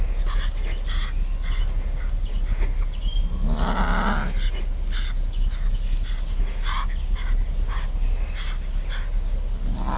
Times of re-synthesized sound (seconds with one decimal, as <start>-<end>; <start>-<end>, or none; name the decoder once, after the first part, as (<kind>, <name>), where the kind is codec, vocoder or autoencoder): none